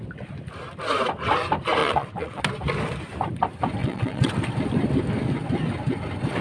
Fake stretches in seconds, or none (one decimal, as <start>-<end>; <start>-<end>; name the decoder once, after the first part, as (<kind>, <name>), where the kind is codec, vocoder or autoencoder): 1.8-2.4 (vocoder, WaveNeXt); 3.8-4.3